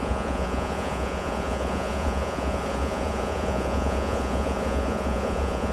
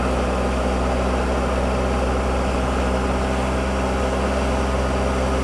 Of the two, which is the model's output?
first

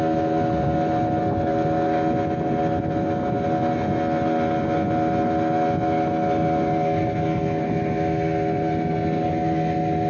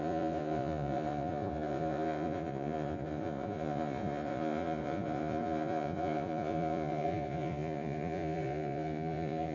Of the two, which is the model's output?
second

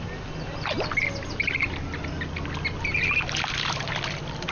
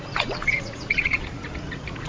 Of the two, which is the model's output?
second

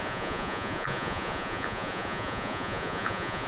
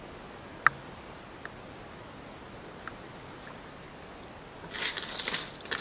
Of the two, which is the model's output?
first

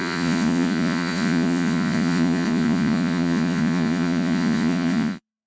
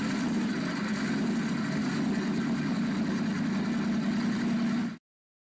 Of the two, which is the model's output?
first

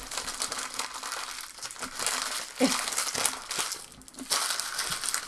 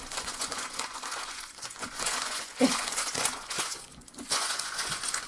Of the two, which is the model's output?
second